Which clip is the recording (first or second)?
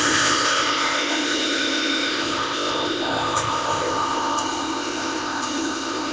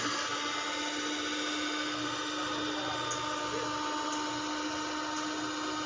second